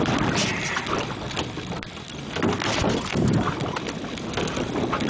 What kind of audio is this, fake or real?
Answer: real